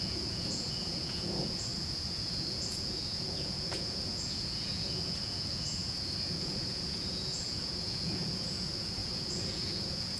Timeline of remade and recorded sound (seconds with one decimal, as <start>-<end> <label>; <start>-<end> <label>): 0.0-10.2 remade